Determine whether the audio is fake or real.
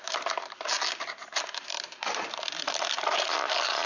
fake